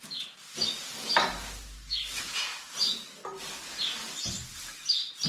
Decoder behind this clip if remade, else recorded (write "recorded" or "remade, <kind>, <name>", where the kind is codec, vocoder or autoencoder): recorded